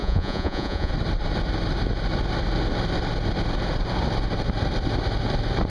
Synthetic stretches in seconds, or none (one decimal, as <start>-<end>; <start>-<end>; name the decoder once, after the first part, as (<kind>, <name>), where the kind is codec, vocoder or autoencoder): 0.0-0.9 (vocoder, Vocos)

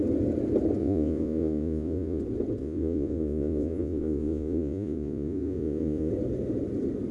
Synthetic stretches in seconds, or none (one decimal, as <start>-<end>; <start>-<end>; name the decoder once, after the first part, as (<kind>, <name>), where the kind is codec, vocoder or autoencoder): 0.8-2.2 (vocoder, Vocos); 2.6-6.1

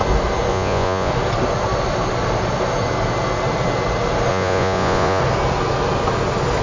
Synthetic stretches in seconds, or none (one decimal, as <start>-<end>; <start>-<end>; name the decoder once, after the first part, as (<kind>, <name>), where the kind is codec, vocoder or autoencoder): 0.5-1.1 (vocoder, Vocos); 4.3-5.2

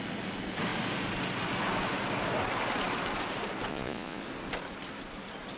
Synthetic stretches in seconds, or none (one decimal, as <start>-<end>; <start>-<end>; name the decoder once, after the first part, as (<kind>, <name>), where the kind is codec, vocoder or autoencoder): 3.7-4.2 (vocoder, Vocos)

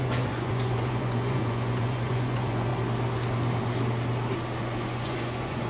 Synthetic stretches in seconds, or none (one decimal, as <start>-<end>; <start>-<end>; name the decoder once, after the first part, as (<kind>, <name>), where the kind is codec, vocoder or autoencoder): 0.0-2.7 (vocoder, Vocos); 4.6-5.7

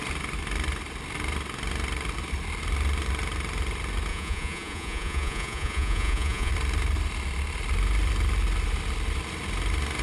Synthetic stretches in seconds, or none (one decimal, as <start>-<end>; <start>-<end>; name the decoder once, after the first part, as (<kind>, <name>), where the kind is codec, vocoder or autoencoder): 4.1-6.5 (vocoder, Vocos)